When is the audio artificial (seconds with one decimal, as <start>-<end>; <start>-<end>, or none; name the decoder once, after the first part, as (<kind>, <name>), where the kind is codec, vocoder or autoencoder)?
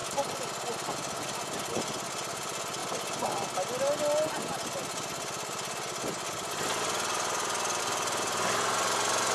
none